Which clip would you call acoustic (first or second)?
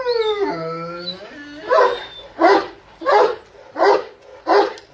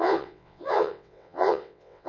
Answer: first